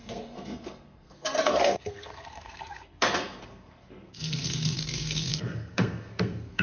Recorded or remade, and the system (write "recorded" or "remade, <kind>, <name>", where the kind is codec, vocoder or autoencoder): remade, codec, SNAC